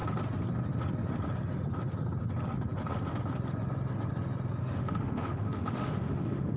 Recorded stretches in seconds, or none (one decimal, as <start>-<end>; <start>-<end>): 0.0-4.6